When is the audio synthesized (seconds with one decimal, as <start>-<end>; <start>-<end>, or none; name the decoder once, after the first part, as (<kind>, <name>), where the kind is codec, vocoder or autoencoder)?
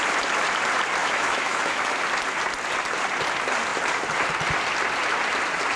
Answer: 1.0-2.0 (autoencoder, DAC-VAE)